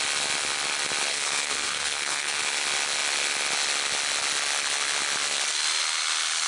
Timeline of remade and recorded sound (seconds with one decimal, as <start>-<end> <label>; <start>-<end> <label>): 0.0-1.1 recorded; 1.1-2.4 remade; 2.4-6.5 recorded